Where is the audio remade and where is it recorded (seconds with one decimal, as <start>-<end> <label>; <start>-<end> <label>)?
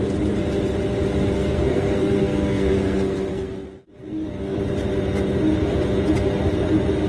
0.0-1.3 recorded; 1.3-4.6 remade; 4.6-7.1 recorded